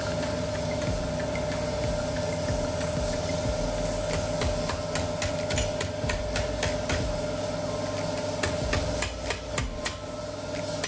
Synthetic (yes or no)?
no